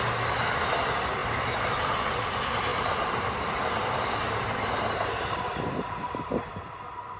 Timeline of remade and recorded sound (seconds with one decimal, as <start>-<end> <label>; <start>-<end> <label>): 0.0-1.2 recorded; 1.2-1.8 remade; 1.8-2.7 recorded; 2.7-6.6 remade; 6.6-7.2 recorded